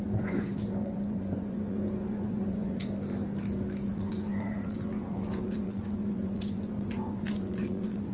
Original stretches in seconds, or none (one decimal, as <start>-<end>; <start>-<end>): 2.8-3.9